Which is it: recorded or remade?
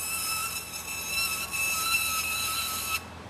recorded